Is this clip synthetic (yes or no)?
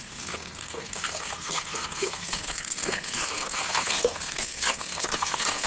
yes